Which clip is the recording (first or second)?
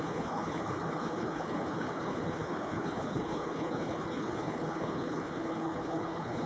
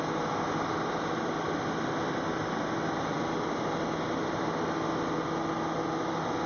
second